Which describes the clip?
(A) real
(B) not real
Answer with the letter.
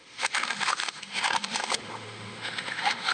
B